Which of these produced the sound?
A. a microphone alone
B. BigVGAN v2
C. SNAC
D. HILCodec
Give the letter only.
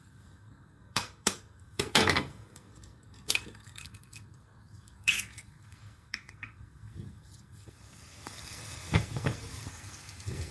C